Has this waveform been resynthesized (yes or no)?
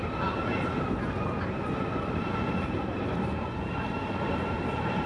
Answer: yes